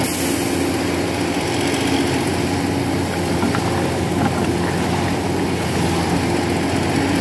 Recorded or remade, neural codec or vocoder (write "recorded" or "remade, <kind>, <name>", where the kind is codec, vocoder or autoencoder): recorded